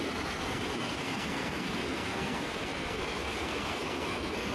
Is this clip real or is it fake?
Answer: fake